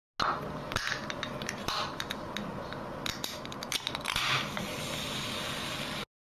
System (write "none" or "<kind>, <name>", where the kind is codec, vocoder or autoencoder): none